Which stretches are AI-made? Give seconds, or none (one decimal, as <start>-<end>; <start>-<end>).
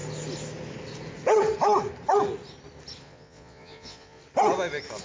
3.0-4.2